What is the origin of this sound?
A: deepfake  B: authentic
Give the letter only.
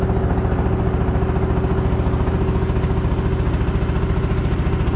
B